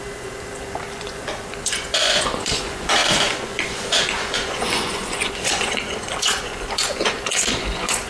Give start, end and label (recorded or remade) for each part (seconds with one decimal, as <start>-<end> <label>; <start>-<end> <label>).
0.0-8.1 remade